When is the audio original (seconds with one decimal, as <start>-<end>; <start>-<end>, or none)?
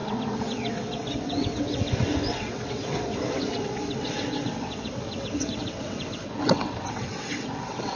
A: none